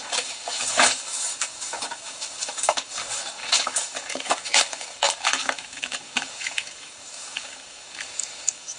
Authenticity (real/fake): fake